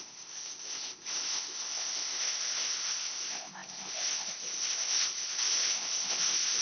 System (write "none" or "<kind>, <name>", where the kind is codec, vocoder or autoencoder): codec, ZipCodec